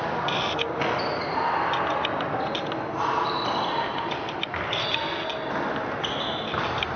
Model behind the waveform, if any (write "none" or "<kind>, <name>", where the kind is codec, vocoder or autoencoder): none